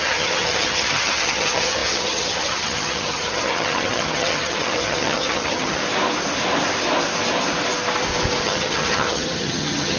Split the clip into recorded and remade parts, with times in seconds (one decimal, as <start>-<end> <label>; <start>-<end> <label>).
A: 0.0-5.8 remade; 5.8-8.4 recorded; 8.4-10.0 remade